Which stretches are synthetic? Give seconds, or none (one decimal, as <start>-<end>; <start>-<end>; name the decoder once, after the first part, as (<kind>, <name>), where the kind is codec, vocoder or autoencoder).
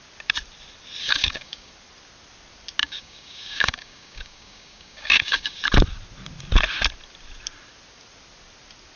1.0-1.7 (codec, DAC); 2.8-5.6